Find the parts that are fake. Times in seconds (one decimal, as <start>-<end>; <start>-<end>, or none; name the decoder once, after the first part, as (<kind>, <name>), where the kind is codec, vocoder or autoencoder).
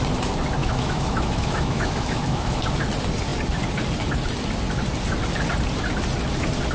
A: 0.6-2.6 (autoencoder, DAC-VAE)